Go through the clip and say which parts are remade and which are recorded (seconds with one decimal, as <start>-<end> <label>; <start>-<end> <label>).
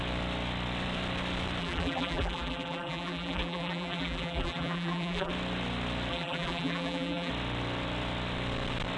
0.0-1.6 recorded; 1.6-5.3 remade; 5.3-6.1 recorded; 6.1-7.3 remade; 7.3-9.0 recorded